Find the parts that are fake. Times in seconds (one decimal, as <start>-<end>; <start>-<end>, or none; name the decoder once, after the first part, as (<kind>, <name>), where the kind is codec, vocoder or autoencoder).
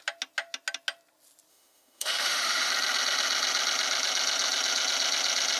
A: 1.5-2.7 (autoencoder, DAC-VAE)